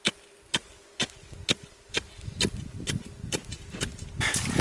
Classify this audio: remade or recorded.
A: recorded